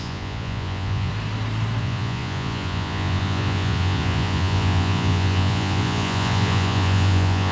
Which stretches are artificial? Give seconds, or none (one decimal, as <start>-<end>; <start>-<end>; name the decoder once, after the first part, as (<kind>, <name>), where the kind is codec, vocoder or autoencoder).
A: 0.0-1.1 (vocoder, Vocos); 1.8-7.5